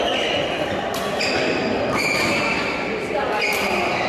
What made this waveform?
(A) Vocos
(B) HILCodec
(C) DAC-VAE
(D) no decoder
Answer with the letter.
D